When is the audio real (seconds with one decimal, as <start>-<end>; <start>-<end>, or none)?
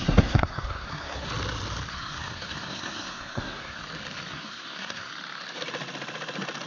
1.3-1.9; 3.8-4.3; 5.1-6.7